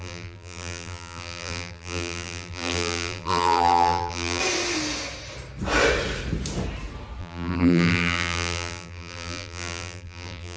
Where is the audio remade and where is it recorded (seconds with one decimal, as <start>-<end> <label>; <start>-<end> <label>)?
0.0-4.4 remade; 4.4-7.2 recorded; 7.2-10.6 remade